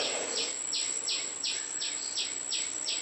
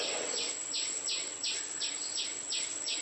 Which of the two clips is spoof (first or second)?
second